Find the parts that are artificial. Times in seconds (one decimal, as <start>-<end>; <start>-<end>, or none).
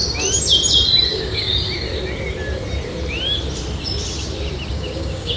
1.1-1.5; 4.7-5.4